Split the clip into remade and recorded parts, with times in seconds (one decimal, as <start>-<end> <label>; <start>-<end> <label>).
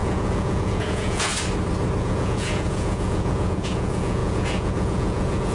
0.0-1.3 remade; 1.3-2.0 recorded; 2.0-5.5 remade